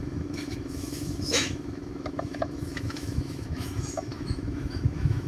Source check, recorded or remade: remade